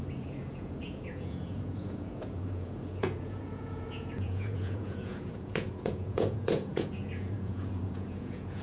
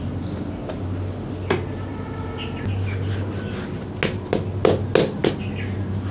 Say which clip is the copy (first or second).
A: first